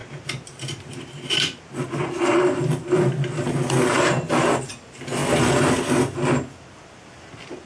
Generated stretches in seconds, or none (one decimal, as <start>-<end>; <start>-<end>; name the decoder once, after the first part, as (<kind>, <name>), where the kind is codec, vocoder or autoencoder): none